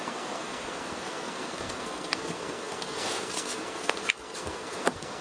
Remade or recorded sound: remade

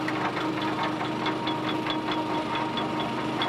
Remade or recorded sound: recorded